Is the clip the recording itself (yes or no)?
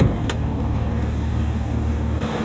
no